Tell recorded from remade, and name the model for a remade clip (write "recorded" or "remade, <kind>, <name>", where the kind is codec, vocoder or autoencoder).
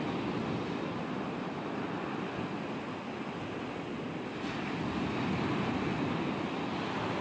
recorded